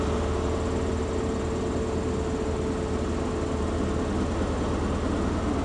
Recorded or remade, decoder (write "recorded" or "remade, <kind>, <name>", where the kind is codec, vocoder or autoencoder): recorded